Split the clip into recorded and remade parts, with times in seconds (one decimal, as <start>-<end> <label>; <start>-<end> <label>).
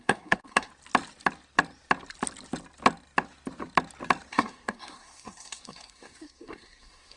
0.0-0.7 remade; 0.7-4.3 recorded; 4.3-7.2 remade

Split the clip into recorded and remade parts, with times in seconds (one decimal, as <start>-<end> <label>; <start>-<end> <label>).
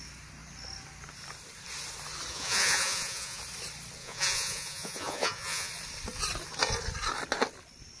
0.0-2.3 recorded; 2.3-3.4 remade; 3.4-4.0 recorded; 4.0-5.7 remade; 5.7-8.0 recorded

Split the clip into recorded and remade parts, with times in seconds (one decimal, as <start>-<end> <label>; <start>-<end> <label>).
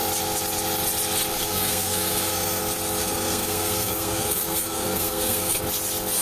0.0-1.3 recorded; 1.3-2.6 remade; 2.6-3.0 recorded; 3.0-5.6 remade; 5.6-6.2 recorded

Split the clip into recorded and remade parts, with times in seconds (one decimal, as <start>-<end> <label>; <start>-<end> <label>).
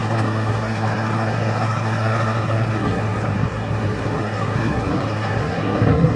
0.0-6.2 remade